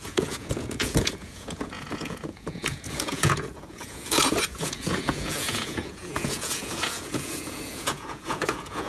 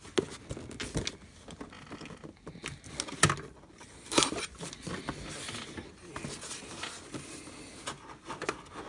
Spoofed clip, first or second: first